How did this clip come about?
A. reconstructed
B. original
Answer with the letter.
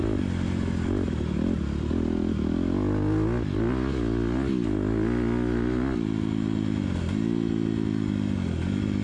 B